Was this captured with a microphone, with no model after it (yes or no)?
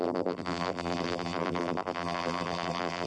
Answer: no